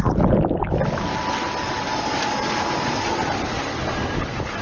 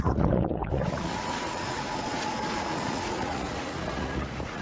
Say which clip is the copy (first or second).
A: second